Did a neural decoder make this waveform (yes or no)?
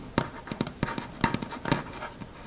no